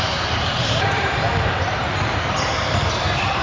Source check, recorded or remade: remade